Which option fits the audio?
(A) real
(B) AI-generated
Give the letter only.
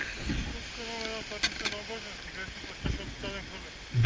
A